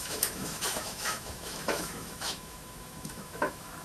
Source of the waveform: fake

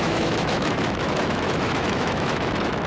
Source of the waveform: fake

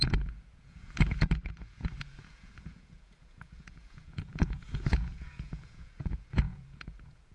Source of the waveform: fake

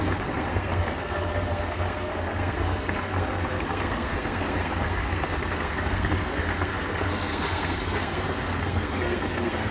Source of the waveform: fake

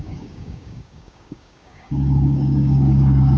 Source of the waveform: fake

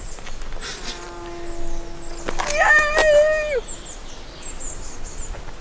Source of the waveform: real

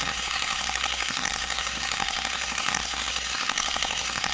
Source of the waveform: fake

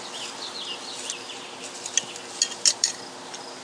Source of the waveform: real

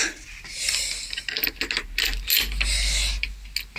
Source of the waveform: real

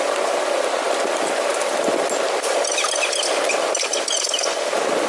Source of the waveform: real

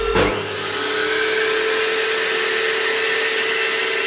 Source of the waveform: real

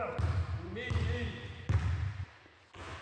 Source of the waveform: real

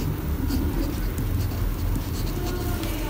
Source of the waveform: real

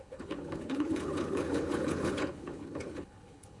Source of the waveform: fake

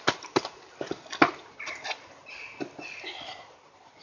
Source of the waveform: real